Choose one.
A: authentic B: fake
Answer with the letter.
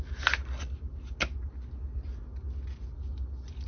A